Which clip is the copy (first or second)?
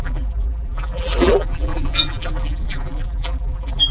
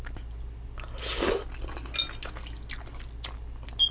first